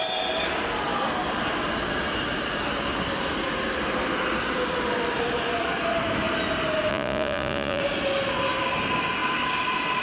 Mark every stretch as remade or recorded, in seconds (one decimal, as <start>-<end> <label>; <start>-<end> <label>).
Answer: 0.0-6.9 recorded; 6.9-7.8 remade; 7.8-10.0 recorded